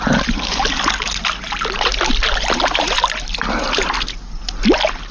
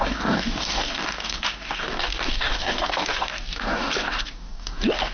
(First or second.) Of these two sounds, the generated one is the second